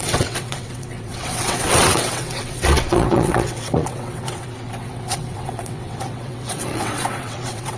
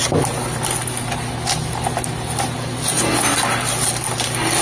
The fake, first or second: first